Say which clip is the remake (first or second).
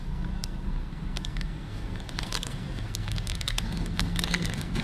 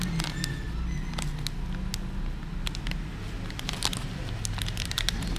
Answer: first